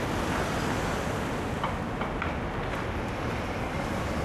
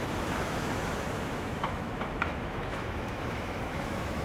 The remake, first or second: second